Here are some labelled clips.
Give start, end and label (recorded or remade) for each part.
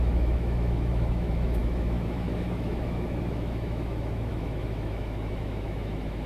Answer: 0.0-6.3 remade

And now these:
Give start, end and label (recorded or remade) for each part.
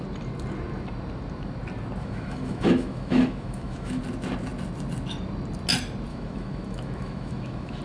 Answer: 0.0-2.0 recorded; 2.0-4.0 remade; 4.0-6.1 recorded; 6.1-7.8 remade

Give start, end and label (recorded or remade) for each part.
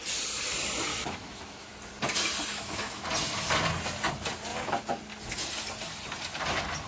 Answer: 0.0-0.9 recorded; 0.9-1.7 remade; 1.7-2.5 recorded; 2.5-3.0 remade; 3.0-6.9 recorded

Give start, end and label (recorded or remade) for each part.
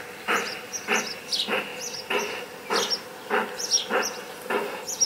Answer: 0.0-5.1 recorded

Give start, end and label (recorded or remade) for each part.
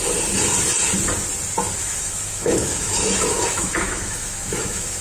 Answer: 0.0-1.8 recorded; 1.8-5.0 remade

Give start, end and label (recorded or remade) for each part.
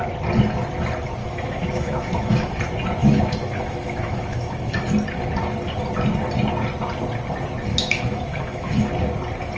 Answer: 0.0-1.2 recorded; 1.2-2.6 remade; 2.6-3.0 recorded; 3.0-4.9 remade; 4.9-7.7 recorded; 7.7-8.9 remade; 8.9-9.6 recorded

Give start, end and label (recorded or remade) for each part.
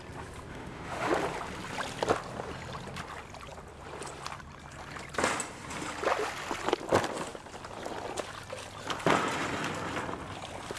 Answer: 0.0-0.5 recorded; 0.5-1.1 remade; 1.1-10.8 recorded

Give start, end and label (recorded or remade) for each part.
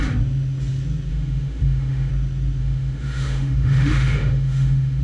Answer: 0.0-1.1 recorded; 1.1-2.1 remade; 2.1-2.6 recorded; 2.6-5.0 remade